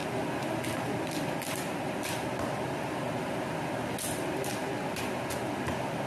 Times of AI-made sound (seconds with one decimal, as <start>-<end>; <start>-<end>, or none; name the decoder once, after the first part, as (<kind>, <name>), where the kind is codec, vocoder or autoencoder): 0.0-3.7 (vocoder, BigVGAN v2)